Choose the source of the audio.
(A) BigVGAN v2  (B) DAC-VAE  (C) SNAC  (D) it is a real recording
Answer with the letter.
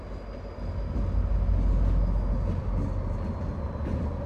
D